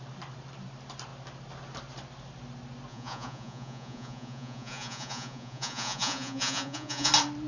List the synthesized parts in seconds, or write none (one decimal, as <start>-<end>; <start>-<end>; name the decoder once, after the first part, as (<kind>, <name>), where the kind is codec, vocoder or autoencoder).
2.9-7.1 (vocoder, Vocos)